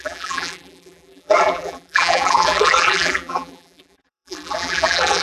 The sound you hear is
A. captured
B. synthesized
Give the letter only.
B